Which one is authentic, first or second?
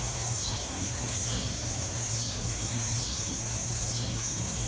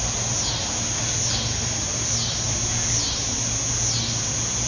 second